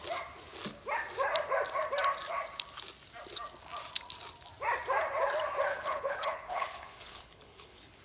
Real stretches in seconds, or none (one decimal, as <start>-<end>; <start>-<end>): 0.0-5.7